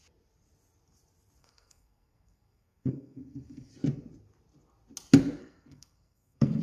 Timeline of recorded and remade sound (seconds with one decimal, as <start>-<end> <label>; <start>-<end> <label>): 0.0-1.4 recorded; 1.4-3.7 remade; 3.7-5.4 recorded; 5.4-6.6 remade